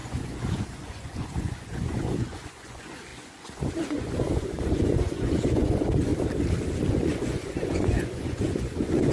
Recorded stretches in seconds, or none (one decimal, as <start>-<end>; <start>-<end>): 6.1-6.9